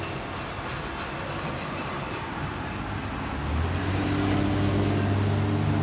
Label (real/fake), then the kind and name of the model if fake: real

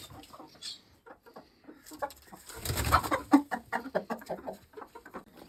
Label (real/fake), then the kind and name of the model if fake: fake, vocoder, BigVGAN v2